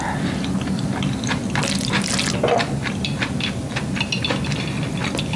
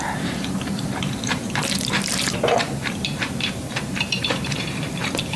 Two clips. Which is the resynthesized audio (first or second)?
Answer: second